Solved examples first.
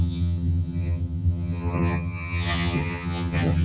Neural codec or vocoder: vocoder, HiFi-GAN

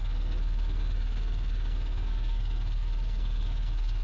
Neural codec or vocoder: codec, SNAC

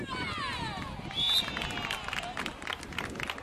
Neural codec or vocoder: none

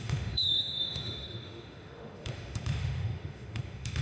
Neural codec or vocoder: autoencoder, DAC-VAE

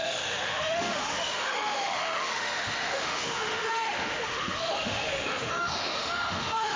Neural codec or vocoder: autoencoder, DAC-VAE